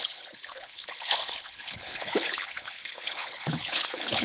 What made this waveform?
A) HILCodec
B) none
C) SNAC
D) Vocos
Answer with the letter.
A